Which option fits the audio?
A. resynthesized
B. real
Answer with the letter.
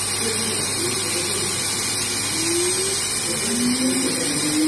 B